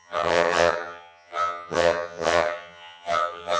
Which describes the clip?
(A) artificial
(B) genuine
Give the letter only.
A